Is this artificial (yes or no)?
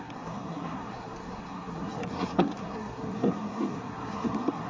yes